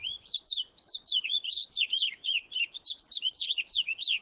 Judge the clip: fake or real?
fake